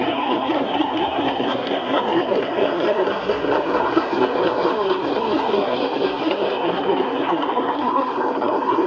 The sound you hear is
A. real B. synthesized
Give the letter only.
B